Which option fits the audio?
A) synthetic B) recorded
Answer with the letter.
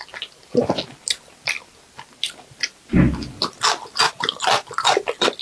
B